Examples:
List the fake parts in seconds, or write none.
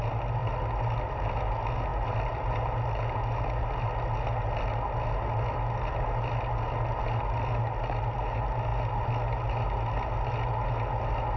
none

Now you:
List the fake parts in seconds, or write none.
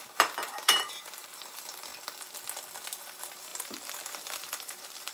0.0-1.9 (vocoder, BigVGAN v2); 3.0-5.1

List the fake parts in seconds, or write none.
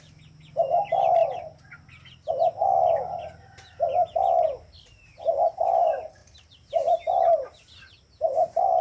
6.2-8.8 (vocoder, BigVGAN v2)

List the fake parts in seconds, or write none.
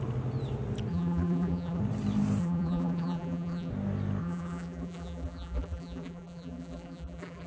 0.9-1.8 (vocoder, BigVGAN v2); 2.4-3.7; 4.2-7.5